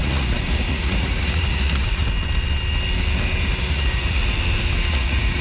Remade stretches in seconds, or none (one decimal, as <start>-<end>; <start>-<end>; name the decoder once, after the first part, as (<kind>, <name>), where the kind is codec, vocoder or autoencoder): 0.0-2.0 (vocoder, Vocos); 3.7-4.2; 4.9-5.4